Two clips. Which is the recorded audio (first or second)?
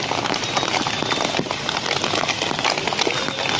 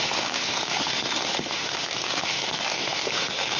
first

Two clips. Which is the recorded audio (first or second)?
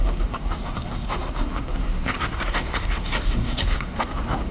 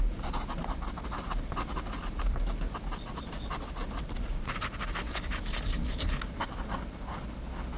second